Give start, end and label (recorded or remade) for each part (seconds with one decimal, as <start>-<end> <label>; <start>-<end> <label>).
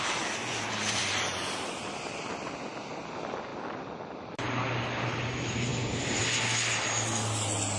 0.0-0.4 recorded; 0.4-1.5 remade; 1.5-7.8 recorded